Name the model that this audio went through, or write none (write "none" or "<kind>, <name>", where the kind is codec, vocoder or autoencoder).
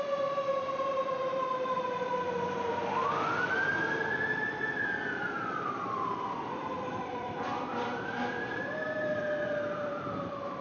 vocoder, BigVGAN v2